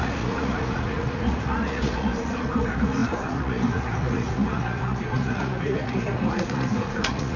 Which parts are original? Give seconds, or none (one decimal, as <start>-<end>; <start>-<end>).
none